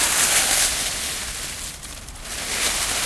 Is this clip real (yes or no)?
yes